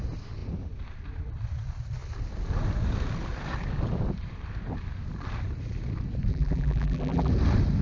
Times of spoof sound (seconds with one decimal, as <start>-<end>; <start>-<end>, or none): 6.3-7.3